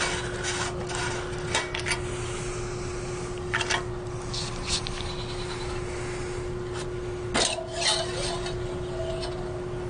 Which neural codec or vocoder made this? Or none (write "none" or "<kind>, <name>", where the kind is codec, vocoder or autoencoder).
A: none